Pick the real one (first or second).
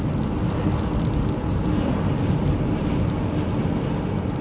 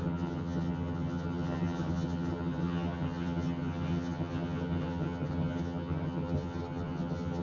first